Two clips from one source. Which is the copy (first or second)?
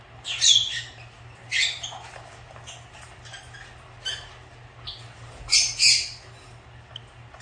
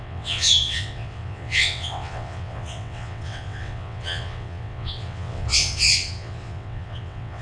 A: second